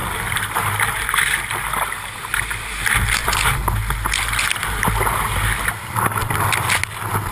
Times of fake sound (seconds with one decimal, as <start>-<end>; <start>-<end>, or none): 0.0-0.6